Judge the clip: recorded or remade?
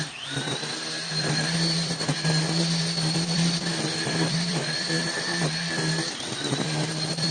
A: remade